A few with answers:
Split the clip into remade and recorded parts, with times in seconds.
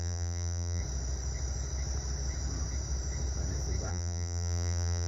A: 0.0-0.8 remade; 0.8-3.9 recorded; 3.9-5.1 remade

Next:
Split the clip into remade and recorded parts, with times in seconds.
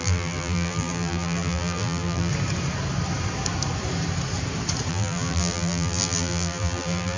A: 0.0-2.3 remade; 2.3-4.9 recorded; 4.9-7.2 remade